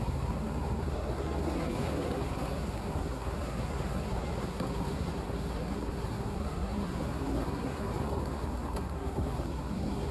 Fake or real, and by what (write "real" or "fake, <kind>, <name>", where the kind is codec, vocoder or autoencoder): fake, codec, SNAC